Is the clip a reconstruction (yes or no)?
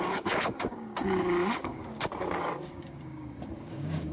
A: yes